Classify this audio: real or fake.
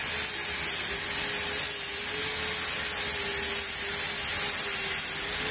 real